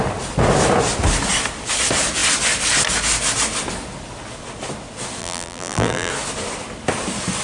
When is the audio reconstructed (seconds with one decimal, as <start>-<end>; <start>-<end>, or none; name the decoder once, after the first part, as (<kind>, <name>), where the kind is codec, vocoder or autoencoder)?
5.2-6.1 (vocoder, BigVGAN v2)